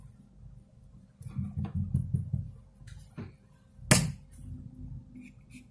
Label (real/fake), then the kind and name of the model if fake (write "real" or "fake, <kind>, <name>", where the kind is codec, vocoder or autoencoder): real